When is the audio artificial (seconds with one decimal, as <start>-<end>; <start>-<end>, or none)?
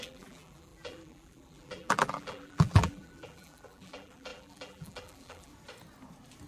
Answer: 0.0-5.5